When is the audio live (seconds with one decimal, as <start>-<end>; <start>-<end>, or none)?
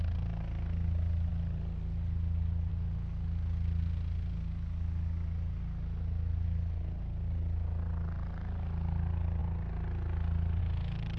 0.0-11.2